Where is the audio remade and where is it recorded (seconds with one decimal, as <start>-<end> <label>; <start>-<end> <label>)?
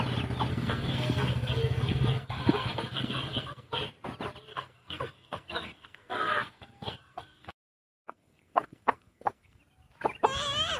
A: 0.0-0.5 recorded; 0.5-3.7 remade; 3.7-4.5 recorded; 4.5-9.6 remade; 9.6-10.8 recorded